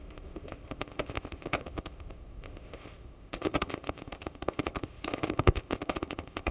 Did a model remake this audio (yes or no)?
yes